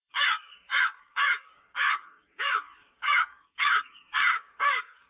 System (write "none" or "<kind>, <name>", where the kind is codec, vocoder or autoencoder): codec, DAC